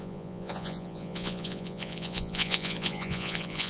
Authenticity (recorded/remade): remade